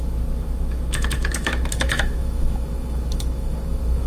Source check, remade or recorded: remade